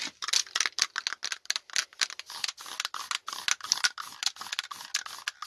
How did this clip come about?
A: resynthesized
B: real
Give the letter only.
B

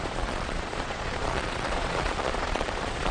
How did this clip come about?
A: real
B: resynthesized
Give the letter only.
B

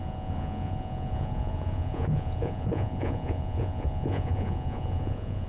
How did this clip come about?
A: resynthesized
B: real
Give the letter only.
A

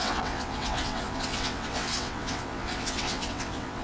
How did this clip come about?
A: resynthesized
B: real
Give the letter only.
A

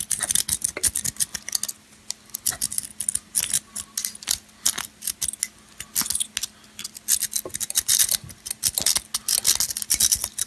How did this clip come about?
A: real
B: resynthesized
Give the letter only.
A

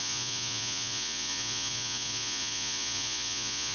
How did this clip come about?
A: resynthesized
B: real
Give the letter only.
A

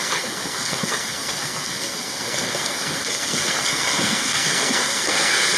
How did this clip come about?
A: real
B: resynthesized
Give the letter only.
B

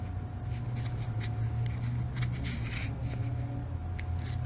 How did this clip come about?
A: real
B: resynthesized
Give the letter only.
A